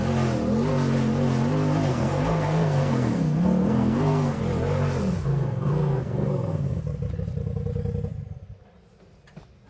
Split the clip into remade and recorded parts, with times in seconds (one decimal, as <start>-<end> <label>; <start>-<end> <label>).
0.0-1.9 recorded; 1.9-4.4 remade; 4.4-5.3 recorded; 5.3-6.8 remade; 6.8-9.7 recorded